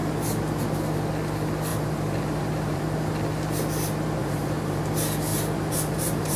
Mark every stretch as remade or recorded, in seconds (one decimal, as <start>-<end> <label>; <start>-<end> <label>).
0.0-1.7 recorded; 1.7-2.8 remade; 2.8-4.2 recorded; 4.2-4.8 remade; 4.8-5.3 recorded; 5.3-6.4 remade

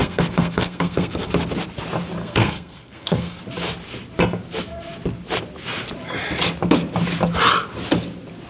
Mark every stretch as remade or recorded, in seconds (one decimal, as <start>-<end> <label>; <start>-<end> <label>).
0.0-1.3 remade; 1.3-2.2 recorded; 2.2-3.4 remade; 3.4-8.5 recorded

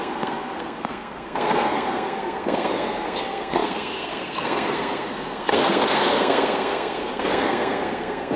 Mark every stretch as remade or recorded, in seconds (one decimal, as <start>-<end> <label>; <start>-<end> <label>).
0.0-8.4 remade